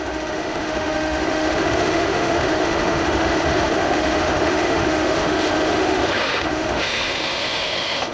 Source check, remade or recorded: remade